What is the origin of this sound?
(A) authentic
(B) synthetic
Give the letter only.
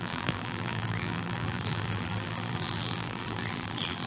B